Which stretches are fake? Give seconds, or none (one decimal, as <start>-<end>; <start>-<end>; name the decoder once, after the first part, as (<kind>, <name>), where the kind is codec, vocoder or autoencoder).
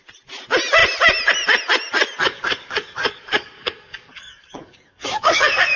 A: 2.2-5.8 (codec, DAC)